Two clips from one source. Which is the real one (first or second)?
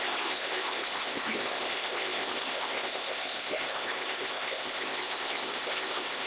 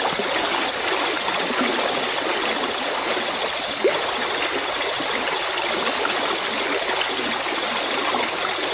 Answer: second